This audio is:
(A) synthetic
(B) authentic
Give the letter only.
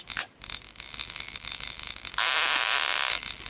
B